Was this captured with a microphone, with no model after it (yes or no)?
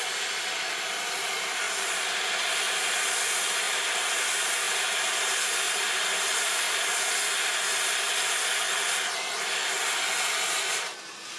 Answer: yes